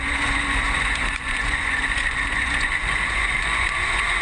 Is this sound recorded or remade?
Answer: remade